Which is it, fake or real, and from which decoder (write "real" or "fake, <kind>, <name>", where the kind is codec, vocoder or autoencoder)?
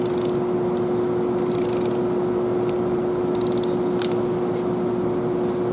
real